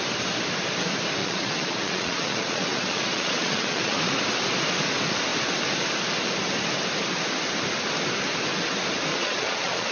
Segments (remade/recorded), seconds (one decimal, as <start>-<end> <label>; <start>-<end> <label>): 0.0-1.2 recorded; 1.2-4.1 remade; 4.1-9.1 recorded; 9.1-9.9 remade

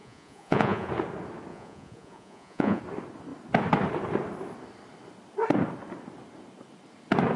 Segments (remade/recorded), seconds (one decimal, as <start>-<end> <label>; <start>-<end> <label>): 0.0-0.9 remade; 0.9-1.5 recorded; 1.5-2.8 remade; 2.8-7.4 recorded

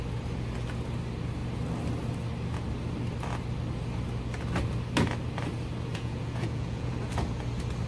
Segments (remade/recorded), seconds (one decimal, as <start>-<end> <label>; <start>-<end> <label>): 0.0-5.9 recorded; 5.9-6.9 remade; 6.9-7.9 recorded